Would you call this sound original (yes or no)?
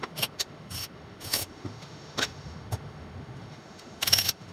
no